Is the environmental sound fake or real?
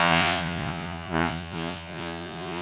fake